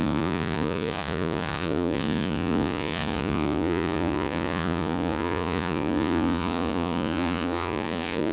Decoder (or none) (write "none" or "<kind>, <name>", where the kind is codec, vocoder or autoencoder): vocoder, Vocos